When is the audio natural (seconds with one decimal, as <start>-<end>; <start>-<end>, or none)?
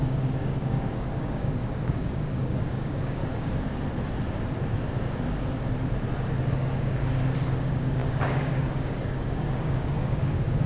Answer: 3.2-6.5; 7.0-7.6